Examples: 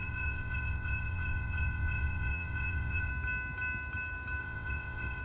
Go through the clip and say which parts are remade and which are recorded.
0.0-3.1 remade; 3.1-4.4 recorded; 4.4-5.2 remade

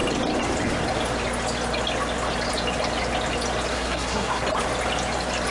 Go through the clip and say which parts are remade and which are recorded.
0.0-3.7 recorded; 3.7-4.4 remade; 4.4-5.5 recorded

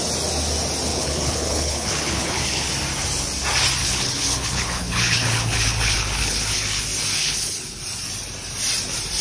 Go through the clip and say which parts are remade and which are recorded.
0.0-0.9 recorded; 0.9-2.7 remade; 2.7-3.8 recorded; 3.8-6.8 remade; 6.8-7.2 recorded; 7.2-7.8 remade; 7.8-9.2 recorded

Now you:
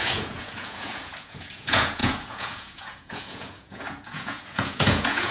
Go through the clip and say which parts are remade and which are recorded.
0.0-5.3 remade

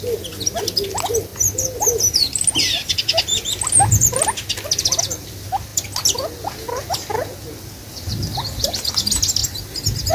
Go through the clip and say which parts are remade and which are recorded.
0.0-10.1 recorded